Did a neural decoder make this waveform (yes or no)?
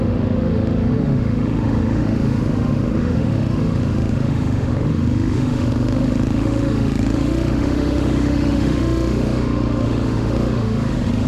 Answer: yes